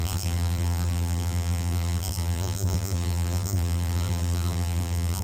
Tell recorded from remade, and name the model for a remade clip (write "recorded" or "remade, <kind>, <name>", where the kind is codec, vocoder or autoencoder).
remade, vocoder, BigVGAN v2